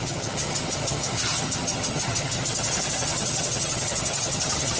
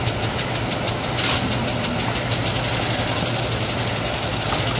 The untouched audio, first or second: second